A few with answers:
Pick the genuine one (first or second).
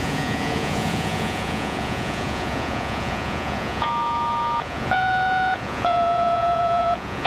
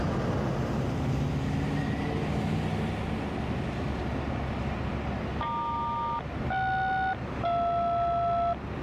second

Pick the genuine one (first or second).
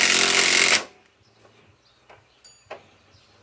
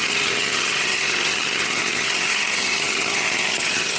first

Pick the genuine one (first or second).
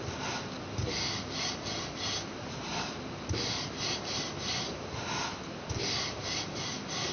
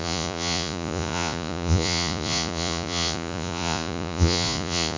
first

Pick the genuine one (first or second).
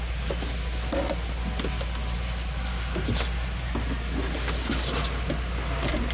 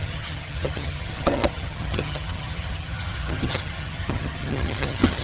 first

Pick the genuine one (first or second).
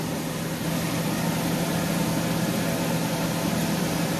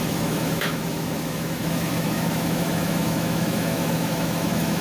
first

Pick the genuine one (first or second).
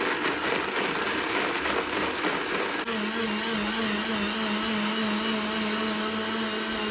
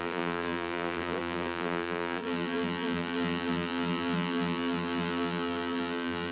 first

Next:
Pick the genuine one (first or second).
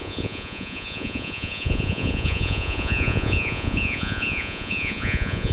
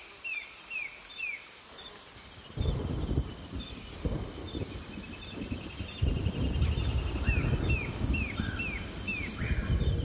second